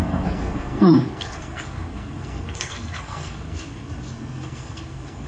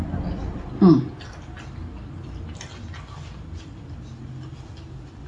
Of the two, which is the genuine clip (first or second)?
second